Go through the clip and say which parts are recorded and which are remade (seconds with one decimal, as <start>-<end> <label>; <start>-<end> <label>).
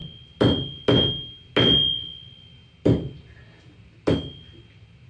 0.0-5.1 recorded